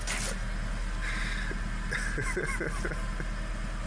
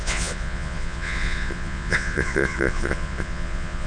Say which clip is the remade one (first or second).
second